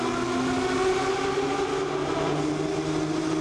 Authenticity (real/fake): real